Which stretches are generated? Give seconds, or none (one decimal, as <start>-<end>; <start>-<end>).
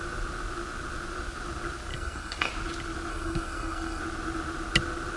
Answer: 1.9-2.5; 3.1-4.0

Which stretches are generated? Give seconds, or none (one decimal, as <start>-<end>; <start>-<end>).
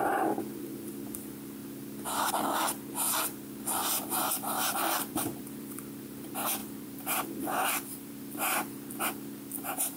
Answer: 3.8-5.8; 6.6-9.0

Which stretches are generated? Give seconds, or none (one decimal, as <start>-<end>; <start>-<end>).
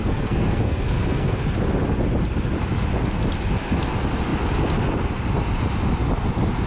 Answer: 0.0-1.4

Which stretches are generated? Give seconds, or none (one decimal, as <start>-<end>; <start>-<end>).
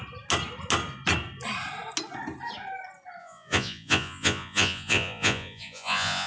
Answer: 3.2-6.3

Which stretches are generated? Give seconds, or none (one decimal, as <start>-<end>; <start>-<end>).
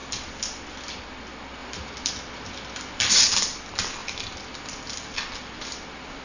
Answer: 1.6-3.2; 4.0-6.2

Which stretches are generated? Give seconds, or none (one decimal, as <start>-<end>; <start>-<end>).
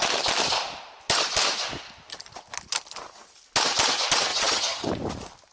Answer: 4.3-4.9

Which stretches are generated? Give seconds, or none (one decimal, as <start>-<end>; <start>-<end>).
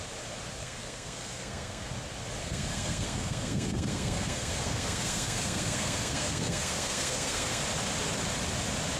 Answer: 0.6-1.9; 2.4-7.6